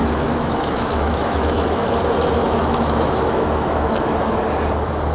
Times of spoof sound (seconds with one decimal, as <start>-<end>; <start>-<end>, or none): 0.0-1.9; 2.4-4.4